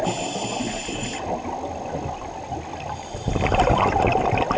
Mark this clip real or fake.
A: real